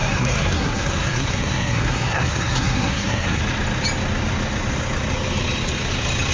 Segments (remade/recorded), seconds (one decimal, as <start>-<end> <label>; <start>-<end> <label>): 0.0-3.4 remade; 3.4-6.3 recorded